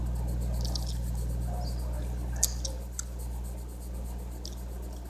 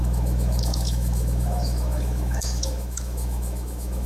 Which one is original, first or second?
first